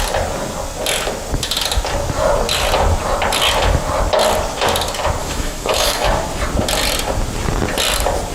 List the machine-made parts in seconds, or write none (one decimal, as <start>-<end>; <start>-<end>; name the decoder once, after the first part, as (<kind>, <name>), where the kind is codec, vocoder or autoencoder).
5.2-6.1 (autoencoder, DAC-VAE)